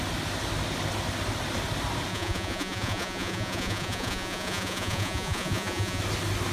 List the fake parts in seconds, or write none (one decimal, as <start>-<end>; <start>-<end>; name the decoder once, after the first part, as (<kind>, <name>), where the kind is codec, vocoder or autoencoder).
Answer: 2.1-6.0 (vocoder, Vocos)